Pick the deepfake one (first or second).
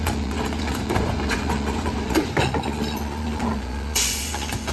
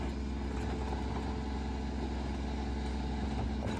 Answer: first